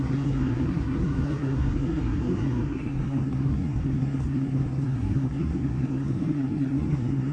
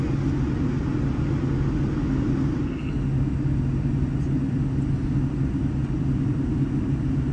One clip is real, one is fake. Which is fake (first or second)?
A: first